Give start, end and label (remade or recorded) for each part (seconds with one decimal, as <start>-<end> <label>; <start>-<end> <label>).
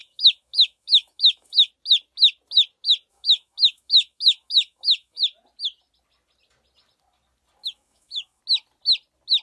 0.0-1.7 remade; 1.7-3.1 recorded; 3.1-5.2 remade; 5.2-7.6 recorded; 7.6-8.4 remade; 8.4-9.4 recorded